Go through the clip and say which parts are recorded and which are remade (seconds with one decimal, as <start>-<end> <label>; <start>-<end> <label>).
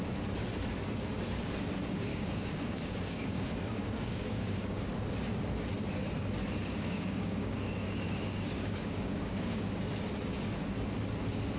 0.0-2.1 recorded; 2.1-4.8 remade; 4.8-6.6 recorded; 6.6-9.6 remade; 9.6-11.6 recorded